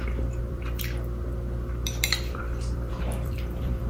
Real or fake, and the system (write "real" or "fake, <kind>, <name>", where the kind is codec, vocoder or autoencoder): fake, vocoder, BigVGAN v2